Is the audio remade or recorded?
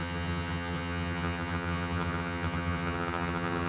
remade